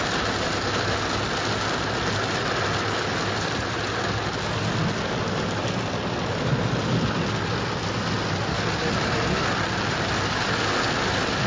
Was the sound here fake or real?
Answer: real